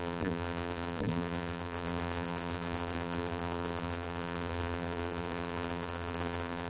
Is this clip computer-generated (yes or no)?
yes